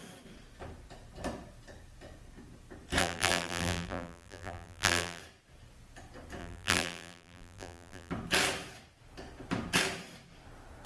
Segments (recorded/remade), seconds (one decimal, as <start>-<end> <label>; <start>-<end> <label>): 0.0-3.0 recorded; 3.0-5.2 remade; 5.2-6.4 recorded; 6.4-8.1 remade; 8.1-10.9 recorded